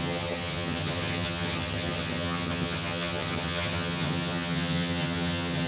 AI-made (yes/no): yes